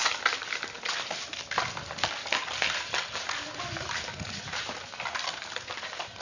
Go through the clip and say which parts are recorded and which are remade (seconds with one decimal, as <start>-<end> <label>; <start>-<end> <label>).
0.0-6.2 recorded